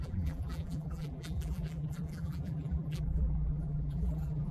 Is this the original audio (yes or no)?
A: no